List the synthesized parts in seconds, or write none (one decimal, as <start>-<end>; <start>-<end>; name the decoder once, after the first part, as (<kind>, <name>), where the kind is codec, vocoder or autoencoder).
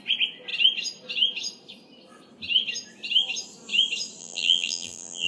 4.2-5.3 (vocoder, BigVGAN v2)